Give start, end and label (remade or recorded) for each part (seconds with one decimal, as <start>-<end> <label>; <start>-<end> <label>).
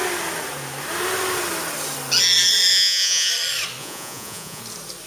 0.0-2.7 recorded; 2.7-3.3 remade; 3.3-3.8 recorded; 3.8-4.6 remade; 4.6-5.1 recorded